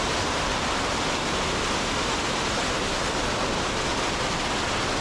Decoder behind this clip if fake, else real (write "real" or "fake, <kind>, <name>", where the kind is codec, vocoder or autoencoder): real